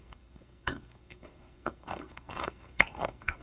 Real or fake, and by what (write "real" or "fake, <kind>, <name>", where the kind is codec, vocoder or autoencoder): fake, codec, SNAC